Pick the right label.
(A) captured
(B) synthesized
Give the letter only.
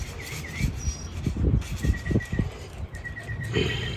A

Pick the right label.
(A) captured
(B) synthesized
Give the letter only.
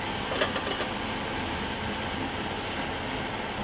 A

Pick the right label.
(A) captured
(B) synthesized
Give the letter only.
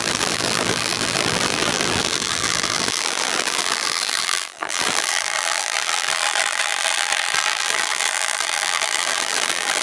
B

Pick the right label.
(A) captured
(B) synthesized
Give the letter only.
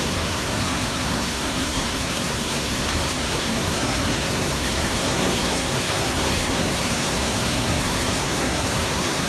B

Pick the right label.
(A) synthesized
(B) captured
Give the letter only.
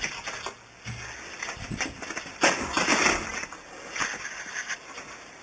B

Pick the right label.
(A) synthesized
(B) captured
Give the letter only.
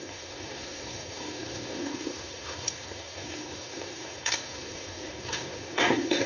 A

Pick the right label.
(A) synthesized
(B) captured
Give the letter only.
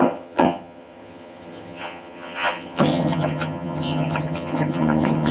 A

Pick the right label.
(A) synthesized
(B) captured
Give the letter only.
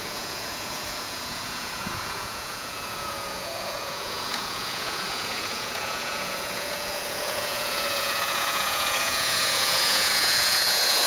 A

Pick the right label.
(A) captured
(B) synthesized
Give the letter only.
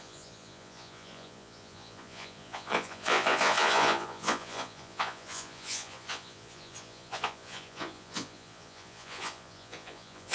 B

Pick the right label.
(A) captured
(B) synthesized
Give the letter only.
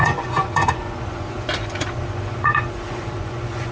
B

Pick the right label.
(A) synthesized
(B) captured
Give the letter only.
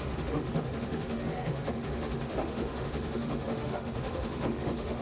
A